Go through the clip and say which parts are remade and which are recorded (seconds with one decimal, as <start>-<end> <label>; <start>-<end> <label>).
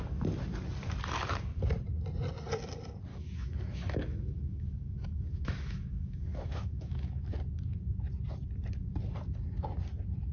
0.0-3.1 recorded; 3.1-7.2 remade; 7.2-10.3 recorded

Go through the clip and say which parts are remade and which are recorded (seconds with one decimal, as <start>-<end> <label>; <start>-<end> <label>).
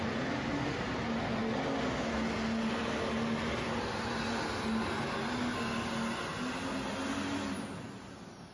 0.0-8.5 recorded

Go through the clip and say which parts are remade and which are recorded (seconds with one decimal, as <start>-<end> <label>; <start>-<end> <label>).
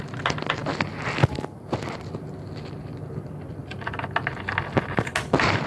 0.0-5.7 recorded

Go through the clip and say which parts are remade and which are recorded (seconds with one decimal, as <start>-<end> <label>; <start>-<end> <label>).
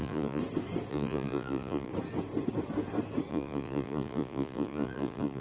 0.0-0.4 remade; 0.4-0.9 recorded; 0.9-1.9 remade; 1.9-3.3 recorded; 3.3-5.4 remade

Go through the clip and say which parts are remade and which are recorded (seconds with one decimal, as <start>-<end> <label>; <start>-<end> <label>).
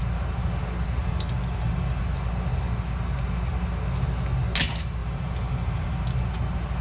0.0-1.0 recorded; 1.0-2.0 remade; 2.0-5.0 recorded; 5.0-6.0 remade; 6.0-6.8 recorded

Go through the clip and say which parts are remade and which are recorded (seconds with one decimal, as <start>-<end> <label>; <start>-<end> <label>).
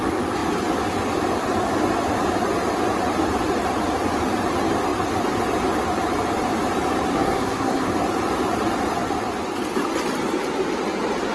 0.0-7.1 recorded; 7.1-7.9 remade; 7.9-11.3 recorded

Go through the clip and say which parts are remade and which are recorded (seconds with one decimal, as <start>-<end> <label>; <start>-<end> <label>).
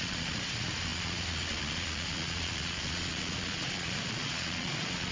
0.0-5.1 remade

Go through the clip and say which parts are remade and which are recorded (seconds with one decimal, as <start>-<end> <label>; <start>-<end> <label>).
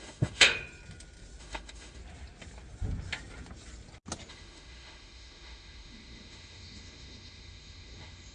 0.0-0.5 remade; 0.5-1.4 recorded; 1.4-2.0 remade; 2.0-4.3 recorded; 4.3-8.3 remade